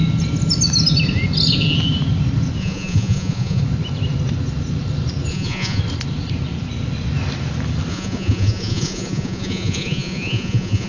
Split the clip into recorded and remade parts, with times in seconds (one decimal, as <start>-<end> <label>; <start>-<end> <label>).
0.0-2.6 recorded; 2.6-3.6 remade; 3.6-5.3 recorded; 5.3-5.8 remade; 5.8-7.9 recorded; 7.9-10.9 remade